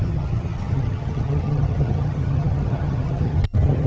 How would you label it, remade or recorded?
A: remade